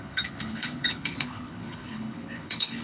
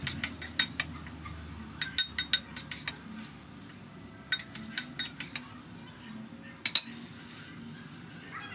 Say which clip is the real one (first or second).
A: second